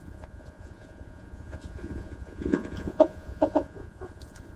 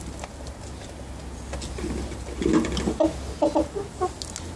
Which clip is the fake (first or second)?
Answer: first